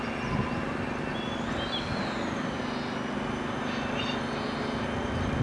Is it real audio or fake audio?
real